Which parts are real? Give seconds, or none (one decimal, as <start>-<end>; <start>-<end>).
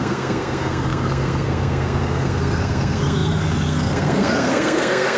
none